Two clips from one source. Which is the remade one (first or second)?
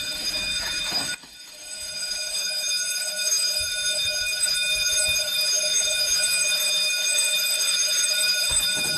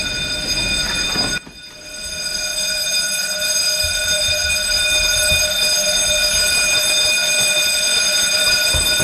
first